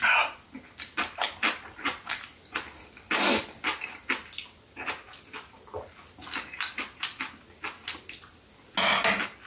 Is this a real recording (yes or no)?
yes